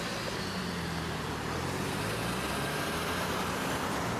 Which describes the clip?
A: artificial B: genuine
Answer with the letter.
B